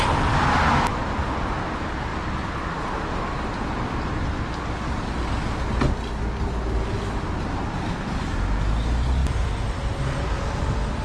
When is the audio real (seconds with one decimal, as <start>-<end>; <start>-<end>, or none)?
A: 0.0-11.0